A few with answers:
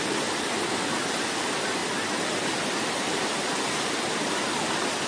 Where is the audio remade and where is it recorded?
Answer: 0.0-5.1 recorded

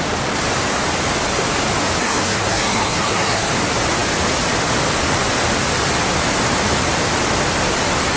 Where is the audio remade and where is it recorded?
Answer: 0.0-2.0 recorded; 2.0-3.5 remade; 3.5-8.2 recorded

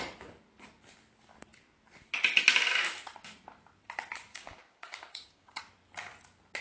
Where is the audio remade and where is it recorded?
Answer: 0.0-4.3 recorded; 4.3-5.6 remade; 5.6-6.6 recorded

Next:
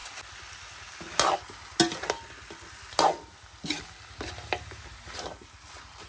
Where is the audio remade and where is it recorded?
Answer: 0.0-6.1 recorded

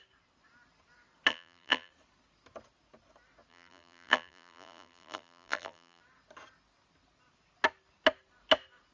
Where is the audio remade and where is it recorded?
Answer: 0.0-1.3 recorded; 1.3-1.9 remade; 1.9-3.5 recorded; 3.5-6.0 remade; 6.0-8.9 recorded

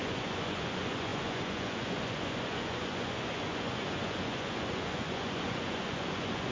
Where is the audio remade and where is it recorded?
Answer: 0.0-6.5 remade